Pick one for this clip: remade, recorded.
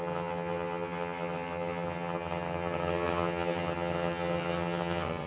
remade